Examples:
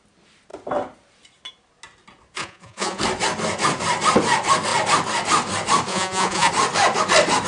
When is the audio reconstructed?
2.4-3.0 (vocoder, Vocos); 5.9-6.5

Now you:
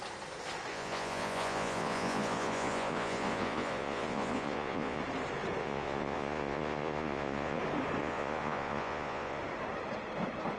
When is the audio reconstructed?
0.7-5.0 (vocoder, Vocos); 5.6-7.6; 8.0-9.4

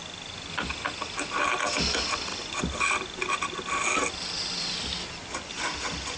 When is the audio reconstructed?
none